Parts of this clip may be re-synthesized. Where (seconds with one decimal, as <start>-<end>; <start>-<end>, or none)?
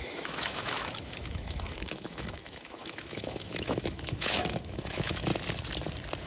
0.0-5.3